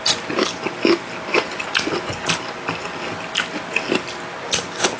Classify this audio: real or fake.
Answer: real